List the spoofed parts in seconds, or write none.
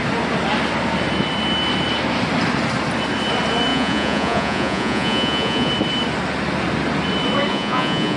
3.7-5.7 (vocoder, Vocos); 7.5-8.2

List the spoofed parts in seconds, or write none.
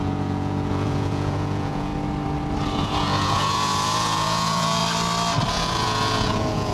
0.0-1.9 (vocoder, Vocos); 2.8-4.8; 5.5-6.7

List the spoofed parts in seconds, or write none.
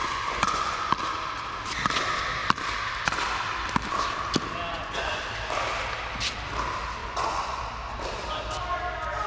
0.0-0.9 (vocoder, Vocos); 4.7-5.2; 7.0-7.6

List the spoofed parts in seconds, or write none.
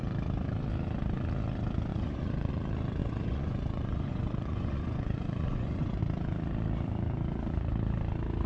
1.9-2.5 (vocoder, Vocos); 3.0-6.0